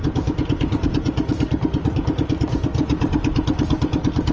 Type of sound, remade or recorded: recorded